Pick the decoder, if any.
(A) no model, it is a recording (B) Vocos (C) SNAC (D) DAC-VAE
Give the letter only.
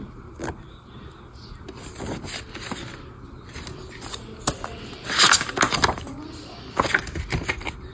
A